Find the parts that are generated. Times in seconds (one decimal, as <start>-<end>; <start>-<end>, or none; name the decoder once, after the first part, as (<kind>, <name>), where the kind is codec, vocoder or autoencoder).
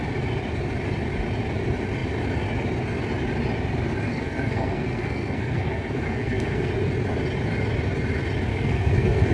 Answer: 4.1-6.7 (codec, SNAC); 8.5-9.3